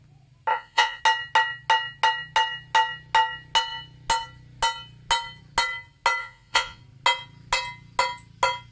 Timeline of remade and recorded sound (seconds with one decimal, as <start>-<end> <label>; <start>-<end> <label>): 0.0-0.5 recorded; 0.5-1.0 remade; 1.0-6.2 recorded; 6.2-6.8 remade; 6.8-8.7 recorded